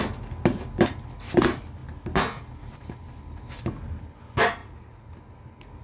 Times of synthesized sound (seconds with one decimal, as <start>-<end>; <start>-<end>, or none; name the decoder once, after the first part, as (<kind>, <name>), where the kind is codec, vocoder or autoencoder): 4.6-5.1 (vocoder, Vocos)